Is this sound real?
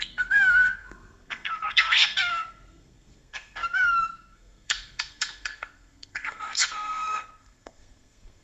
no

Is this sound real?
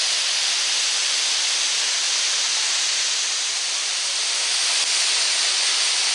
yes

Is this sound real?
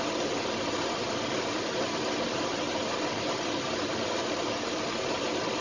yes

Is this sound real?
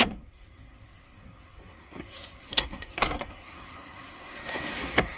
no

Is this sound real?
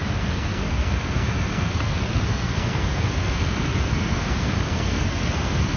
no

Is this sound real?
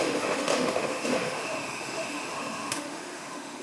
no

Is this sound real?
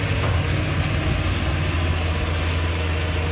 yes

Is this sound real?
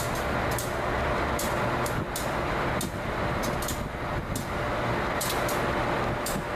yes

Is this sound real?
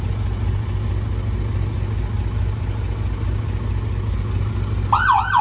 yes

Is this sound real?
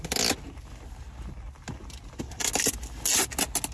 yes